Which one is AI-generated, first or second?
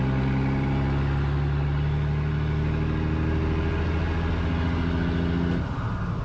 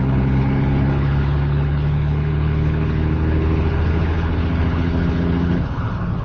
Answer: second